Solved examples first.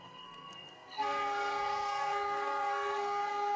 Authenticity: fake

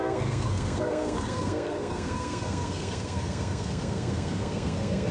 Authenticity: fake